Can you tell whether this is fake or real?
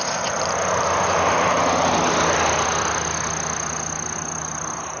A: real